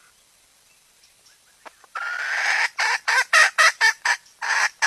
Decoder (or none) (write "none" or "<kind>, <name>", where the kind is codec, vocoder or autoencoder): vocoder, BigVGAN v2